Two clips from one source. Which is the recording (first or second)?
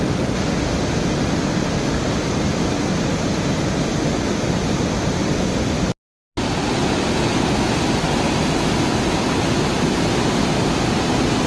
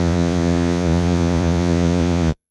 first